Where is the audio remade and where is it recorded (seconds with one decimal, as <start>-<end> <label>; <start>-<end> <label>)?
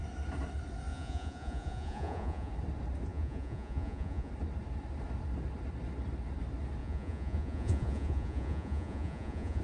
0.0-0.9 recorded; 0.9-2.5 remade; 2.5-3.1 recorded; 3.1-4.3 remade; 4.3-6.8 recorded; 6.8-9.6 remade